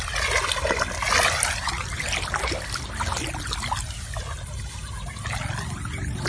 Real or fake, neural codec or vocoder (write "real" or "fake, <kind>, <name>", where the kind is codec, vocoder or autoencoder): real